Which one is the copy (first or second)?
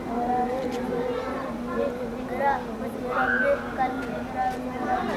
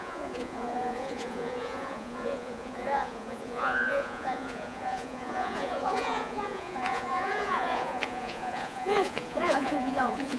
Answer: second